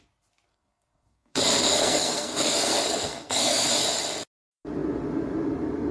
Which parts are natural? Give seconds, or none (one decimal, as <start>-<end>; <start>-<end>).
0.0-0.5; 3.7-5.9